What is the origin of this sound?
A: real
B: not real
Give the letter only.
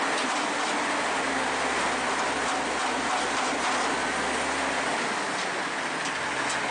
A